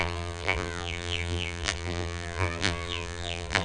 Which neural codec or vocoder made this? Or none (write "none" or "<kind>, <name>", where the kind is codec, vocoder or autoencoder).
vocoder, BigVGAN v2